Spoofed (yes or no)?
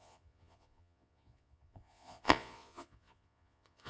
yes